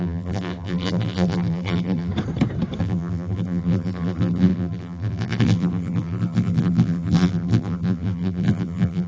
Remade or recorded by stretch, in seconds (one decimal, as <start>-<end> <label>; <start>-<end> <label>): 0.0-2.1 remade; 2.1-2.8 recorded; 2.8-9.1 remade